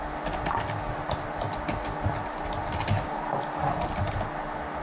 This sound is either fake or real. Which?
real